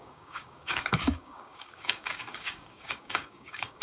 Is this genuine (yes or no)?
no